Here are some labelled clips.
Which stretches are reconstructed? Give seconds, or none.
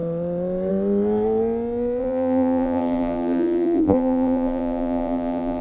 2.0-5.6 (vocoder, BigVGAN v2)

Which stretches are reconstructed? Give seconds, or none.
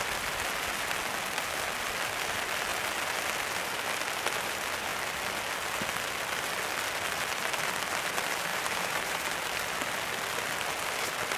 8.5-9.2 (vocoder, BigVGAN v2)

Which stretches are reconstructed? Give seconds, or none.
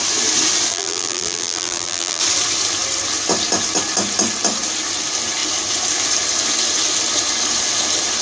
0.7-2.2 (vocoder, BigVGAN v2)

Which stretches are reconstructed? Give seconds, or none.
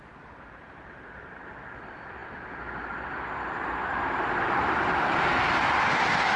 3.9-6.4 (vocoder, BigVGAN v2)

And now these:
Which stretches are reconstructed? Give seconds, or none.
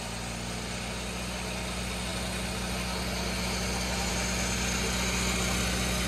none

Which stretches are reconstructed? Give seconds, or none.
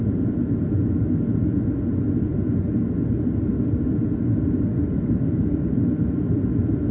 4.7-6.9 (vocoder, BigVGAN v2)